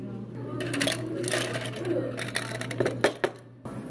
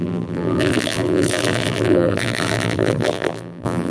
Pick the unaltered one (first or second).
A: first